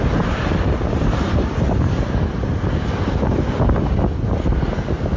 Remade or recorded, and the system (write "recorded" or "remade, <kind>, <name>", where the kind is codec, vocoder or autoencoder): recorded